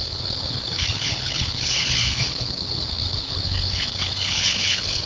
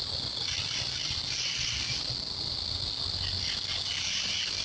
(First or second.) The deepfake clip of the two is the first